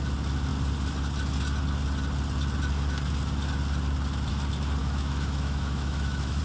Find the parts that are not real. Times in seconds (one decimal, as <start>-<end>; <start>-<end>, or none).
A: 4.8-6.4